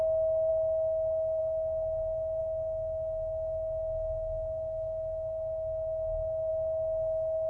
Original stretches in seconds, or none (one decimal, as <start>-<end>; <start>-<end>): 0.0-7.5